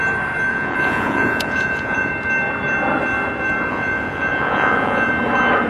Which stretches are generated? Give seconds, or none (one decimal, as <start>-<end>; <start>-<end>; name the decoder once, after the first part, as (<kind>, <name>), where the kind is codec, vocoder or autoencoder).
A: 0.5-2.1 (vocoder, Vocos); 3.7-5.1